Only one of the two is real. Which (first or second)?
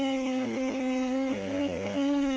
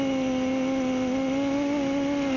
second